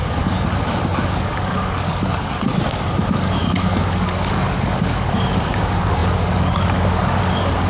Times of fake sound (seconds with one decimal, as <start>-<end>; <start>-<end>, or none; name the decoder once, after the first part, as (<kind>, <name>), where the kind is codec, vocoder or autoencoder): 0.0-7.7 (codec, DAC)